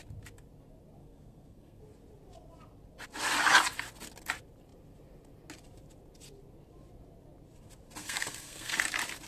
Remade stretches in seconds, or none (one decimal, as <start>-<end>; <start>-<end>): 1.0-1.8; 8.0-8.8